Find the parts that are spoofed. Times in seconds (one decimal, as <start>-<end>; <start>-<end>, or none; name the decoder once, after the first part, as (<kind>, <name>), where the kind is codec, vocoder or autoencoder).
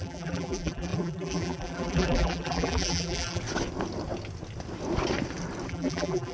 0.0-3.4 (vocoder, BigVGAN v2); 5.7-6.3